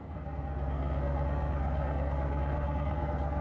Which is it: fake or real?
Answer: fake